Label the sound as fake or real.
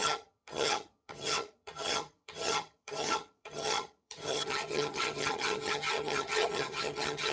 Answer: fake